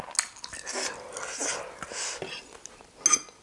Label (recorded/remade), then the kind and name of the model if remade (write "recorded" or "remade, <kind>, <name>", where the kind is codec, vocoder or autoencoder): recorded